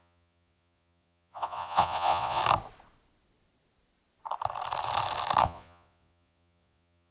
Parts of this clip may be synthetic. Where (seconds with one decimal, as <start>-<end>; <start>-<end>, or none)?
0.0-2.4; 5.4-7.1